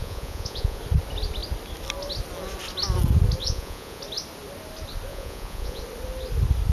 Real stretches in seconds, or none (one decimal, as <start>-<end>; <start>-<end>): 0.8-3.4; 4.0-5.1; 5.8-6.7